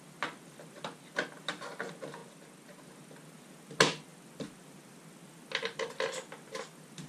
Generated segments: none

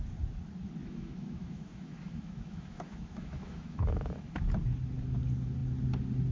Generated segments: 0.8-4.5

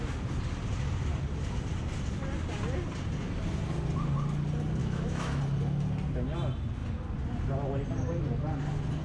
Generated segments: 4.8-5.4

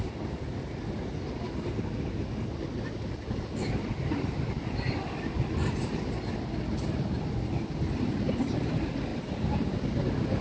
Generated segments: none

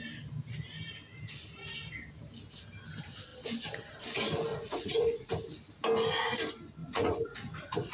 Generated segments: 4.5-5.3; 6.8-7.9

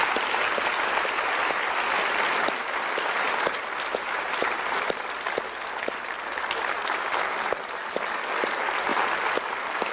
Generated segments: none